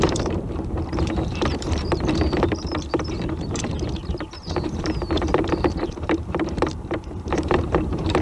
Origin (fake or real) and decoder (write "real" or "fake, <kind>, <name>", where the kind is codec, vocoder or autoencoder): fake, vocoder, BigVGAN v2